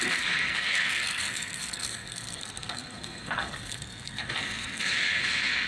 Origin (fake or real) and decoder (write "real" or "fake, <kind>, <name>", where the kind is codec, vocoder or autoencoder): fake, codec, SNAC